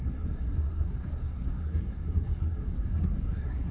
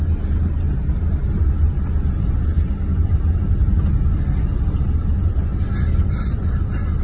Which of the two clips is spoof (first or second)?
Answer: first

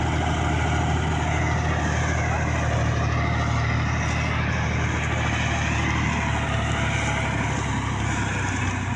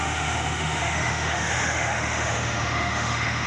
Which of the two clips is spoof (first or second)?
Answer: second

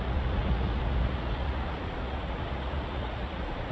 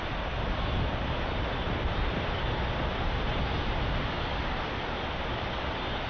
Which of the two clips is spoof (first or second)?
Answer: first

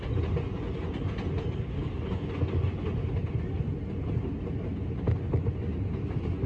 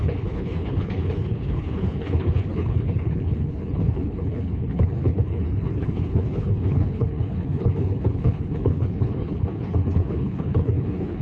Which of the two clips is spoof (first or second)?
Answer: second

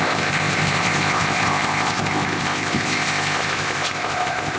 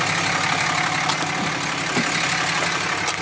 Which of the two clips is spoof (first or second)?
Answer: first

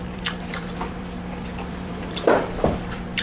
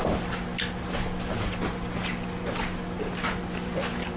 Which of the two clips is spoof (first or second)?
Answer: first